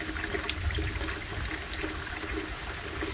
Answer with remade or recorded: recorded